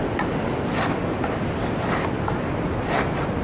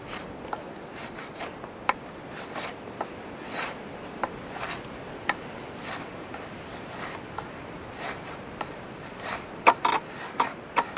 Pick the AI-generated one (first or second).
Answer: second